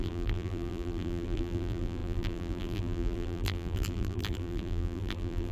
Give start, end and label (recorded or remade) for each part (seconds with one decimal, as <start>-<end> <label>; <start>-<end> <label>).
0.0-5.5 remade